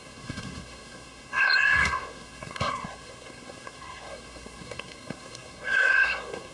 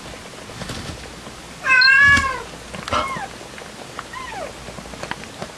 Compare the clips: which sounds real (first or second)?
second